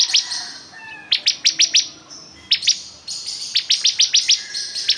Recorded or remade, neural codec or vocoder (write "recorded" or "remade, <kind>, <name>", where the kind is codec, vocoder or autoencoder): recorded